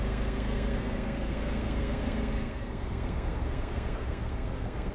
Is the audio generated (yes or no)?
yes